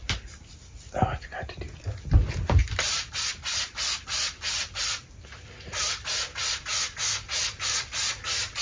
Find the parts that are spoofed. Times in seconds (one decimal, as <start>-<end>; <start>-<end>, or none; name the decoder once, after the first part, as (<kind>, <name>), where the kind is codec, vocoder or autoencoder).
0.0-1.6 (vocoder, BigVGAN v2); 2.6-3.3